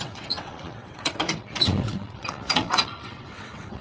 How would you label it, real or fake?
fake